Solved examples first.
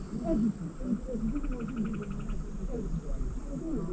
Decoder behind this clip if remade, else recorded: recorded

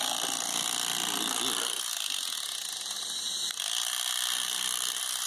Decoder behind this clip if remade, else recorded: recorded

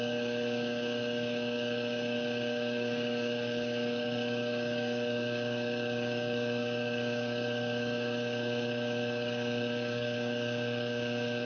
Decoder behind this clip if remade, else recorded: remade, codec, DAC